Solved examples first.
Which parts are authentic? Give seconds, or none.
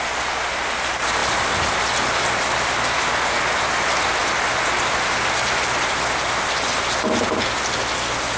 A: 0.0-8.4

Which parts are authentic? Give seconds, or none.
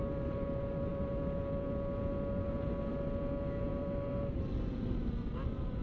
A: 0.0-5.8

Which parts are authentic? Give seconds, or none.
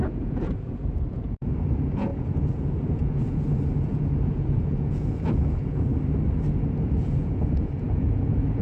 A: 5.9-6.8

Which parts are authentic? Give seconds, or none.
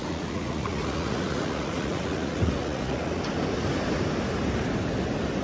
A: 3.2-5.4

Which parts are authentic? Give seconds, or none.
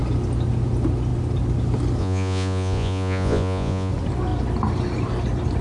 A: 0.0-2.0; 3.9-5.6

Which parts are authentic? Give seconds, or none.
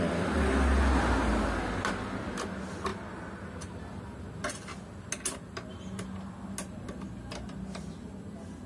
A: 0.0-8.7